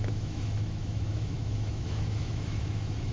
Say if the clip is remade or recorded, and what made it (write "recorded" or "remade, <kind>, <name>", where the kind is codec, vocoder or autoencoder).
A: remade, autoencoder, DAC-VAE